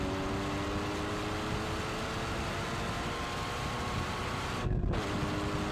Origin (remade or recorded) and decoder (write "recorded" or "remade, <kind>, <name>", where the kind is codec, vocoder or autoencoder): recorded